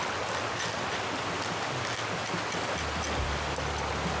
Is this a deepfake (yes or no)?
no